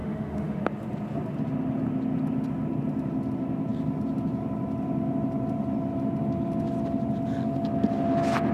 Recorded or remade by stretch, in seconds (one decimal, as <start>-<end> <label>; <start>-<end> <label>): 0.0-0.6 remade; 0.6-8.5 recorded